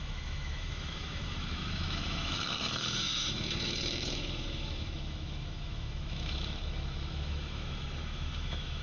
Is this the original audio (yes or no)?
no